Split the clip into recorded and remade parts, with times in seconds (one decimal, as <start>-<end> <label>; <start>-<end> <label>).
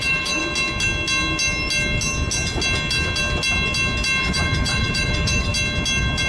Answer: 0.0-0.4 remade; 0.4-4.2 recorded; 4.2-5.5 remade; 5.5-6.3 recorded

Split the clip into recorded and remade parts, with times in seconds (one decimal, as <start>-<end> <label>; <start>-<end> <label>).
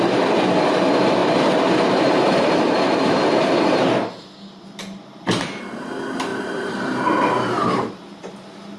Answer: 0.0-1.2 recorded; 1.2-5.6 remade; 5.6-6.3 recorded; 6.3-7.9 remade; 7.9-8.8 recorded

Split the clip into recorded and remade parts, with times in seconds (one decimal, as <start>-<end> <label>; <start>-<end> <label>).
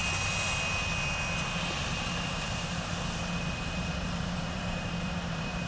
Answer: 0.0-2.5 recorded; 2.5-2.9 remade; 2.9-3.6 recorded; 3.6-5.7 remade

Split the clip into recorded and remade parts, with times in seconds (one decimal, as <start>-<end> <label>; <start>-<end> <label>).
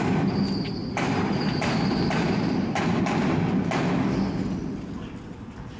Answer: 0.0-0.8 recorded; 0.8-2.8 remade; 2.8-5.8 recorded